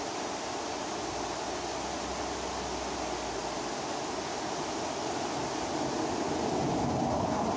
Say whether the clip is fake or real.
real